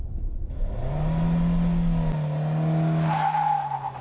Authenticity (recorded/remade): recorded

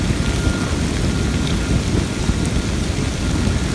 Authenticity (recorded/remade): recorded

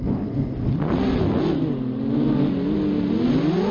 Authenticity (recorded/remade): recorded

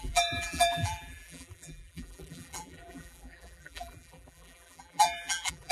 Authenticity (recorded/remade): remade